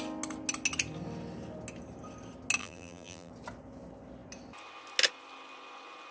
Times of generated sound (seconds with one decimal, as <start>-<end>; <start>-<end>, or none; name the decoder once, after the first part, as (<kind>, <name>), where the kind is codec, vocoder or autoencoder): 2.6-3.3 (vocoder, BigVGAN v2)

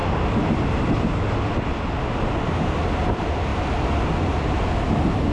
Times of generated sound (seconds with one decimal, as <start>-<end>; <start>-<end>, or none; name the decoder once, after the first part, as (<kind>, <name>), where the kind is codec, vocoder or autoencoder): none

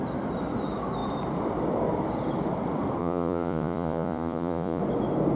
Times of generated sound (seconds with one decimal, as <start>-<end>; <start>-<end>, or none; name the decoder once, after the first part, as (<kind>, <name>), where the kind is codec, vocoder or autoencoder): 3.0-4.8 (vocoder, Vocos)

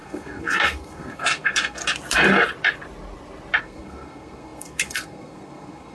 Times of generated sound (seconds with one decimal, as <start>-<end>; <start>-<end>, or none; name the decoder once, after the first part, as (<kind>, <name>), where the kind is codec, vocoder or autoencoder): 0.0-1.8 (codec, SNAC); 3.6-5.9